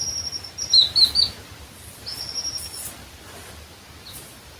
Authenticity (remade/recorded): recorded